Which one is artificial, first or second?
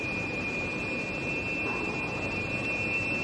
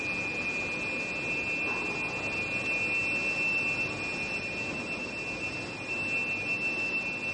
first